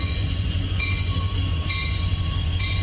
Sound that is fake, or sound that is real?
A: fake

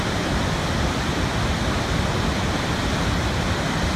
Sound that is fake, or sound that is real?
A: real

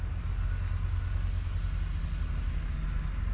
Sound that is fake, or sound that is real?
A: real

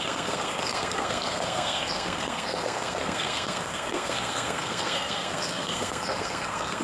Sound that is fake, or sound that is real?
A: fake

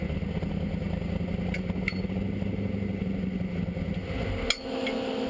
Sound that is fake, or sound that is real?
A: real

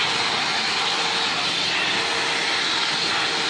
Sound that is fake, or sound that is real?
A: real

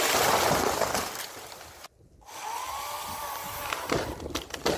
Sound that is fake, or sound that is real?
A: real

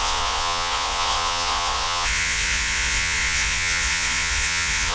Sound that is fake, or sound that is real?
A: fake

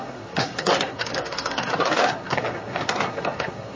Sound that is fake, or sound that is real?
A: fake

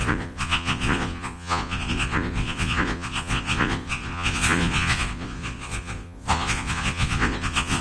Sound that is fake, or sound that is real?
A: fake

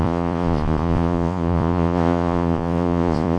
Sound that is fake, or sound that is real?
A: fake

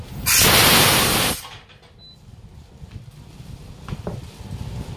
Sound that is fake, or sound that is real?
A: real